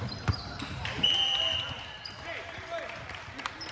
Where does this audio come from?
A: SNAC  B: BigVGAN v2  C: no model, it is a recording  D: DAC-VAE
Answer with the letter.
B